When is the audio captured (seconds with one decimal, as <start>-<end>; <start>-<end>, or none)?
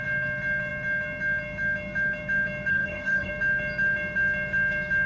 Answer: 0.0-2.7; 3.3-5.1